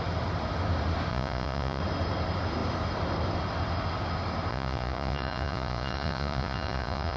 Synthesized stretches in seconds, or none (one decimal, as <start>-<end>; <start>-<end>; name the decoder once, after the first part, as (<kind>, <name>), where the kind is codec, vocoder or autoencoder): 1.1-1.8 (vocoder, Vocos); 4.5-7.2